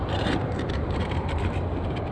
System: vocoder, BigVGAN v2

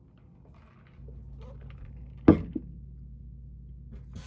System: none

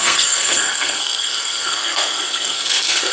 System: codec, SNAC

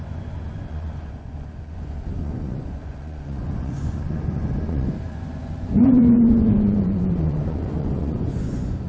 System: vocoder, Vocos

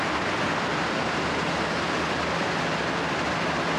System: none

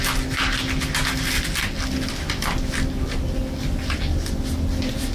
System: none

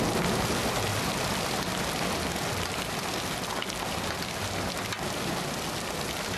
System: none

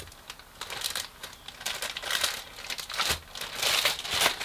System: none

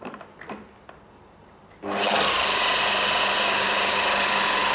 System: none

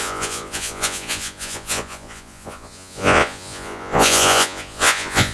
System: vocoder, Vocos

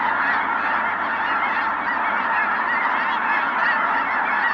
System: none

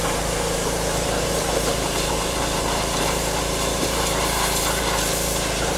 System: vocoder, BigVGAN v2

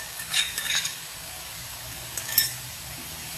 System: codec, DAC